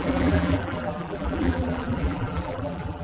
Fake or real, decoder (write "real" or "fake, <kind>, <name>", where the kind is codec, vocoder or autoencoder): fake, vocoder, BigVGAN v2